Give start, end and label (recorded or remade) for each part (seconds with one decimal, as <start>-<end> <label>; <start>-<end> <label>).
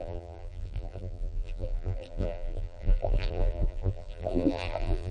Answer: 0.0-5.1 remade